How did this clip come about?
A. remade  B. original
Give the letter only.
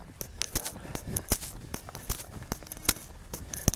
B